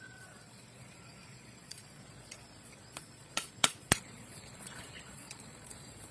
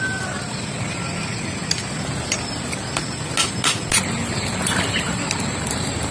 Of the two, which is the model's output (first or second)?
first